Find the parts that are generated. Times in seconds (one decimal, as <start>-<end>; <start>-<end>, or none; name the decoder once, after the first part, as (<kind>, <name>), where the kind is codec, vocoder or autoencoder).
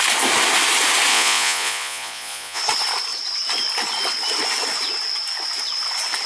1.1-2.6 (vocoder, Vocos)